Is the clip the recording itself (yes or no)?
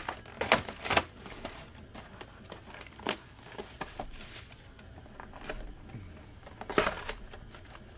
yes